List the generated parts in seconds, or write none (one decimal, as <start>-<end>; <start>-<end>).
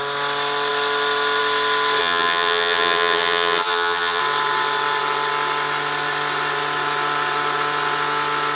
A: 2.0-4.2